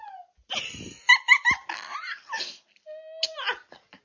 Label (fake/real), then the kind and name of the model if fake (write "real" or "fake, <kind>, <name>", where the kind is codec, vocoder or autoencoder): real